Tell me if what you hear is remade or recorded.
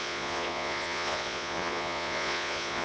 remade